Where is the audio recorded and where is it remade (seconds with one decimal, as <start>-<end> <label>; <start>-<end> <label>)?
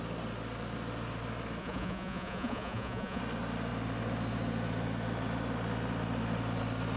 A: 0.0-1.6 recorded; 1.6-3.2 remade; 3.2-7.0 recorded